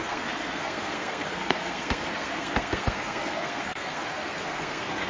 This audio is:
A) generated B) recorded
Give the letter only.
A